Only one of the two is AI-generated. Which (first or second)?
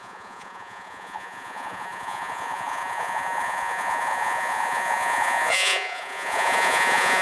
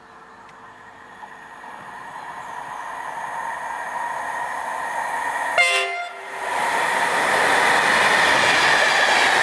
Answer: first